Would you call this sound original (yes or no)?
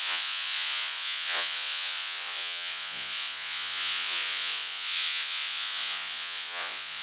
no